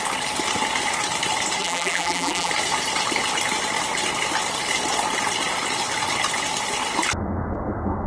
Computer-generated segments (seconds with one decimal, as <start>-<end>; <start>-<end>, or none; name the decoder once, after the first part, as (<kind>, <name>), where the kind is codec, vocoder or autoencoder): 1.6-2.5 (vocoder, BigVGAN v2)